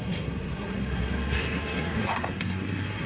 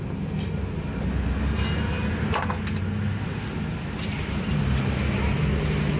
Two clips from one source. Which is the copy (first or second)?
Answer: first